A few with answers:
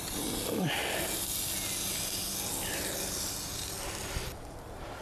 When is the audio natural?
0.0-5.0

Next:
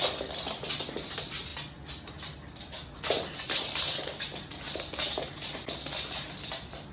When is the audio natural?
0.0-6.9

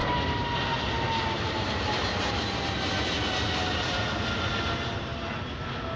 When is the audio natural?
0.0-6.0

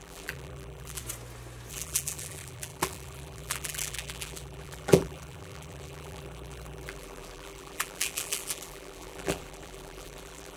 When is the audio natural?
1.0-1.7

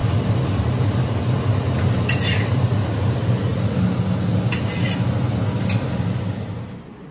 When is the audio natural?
0.0-7.1